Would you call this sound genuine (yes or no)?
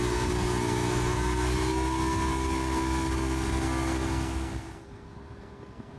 no